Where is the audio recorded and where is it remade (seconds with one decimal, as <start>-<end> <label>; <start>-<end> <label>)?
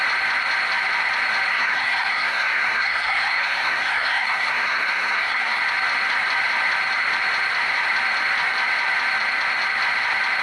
0.0-1.5 recorded; 1.5-5.6 remade; 5.6-10.4 recorded